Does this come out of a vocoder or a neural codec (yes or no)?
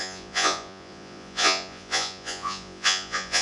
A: yes